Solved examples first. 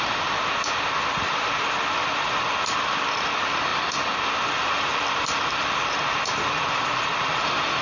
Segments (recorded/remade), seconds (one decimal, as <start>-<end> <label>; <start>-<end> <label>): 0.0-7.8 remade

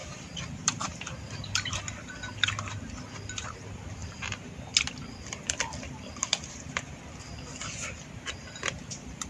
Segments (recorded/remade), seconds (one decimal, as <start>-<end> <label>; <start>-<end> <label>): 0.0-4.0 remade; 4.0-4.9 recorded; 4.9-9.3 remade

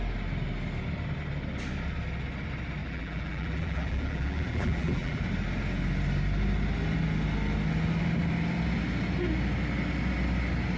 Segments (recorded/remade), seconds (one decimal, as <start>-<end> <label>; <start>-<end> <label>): 0.0-2.8 recorded; 2.8-5.2 remade; 5.2-10.8 recorded

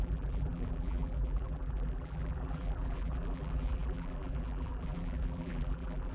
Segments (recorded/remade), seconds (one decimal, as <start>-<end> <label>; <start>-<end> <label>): 0.0-6.1 remade